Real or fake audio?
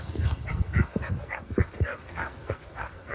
fake